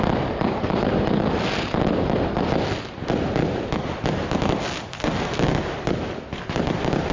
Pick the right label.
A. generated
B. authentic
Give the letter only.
B